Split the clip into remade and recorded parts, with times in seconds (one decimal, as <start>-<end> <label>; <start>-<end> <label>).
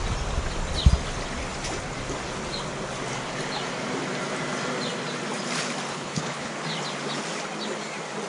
0.0-5.9 recorded; 5.9-6.5 remade; 6.5-8.3 recorded